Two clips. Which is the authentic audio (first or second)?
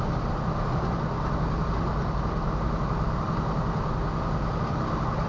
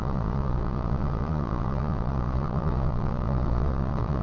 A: first